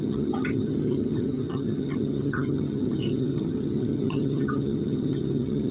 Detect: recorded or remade remade